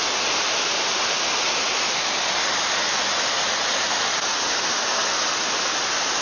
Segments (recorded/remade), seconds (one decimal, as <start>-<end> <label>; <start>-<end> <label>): 0.0-6.2 recorded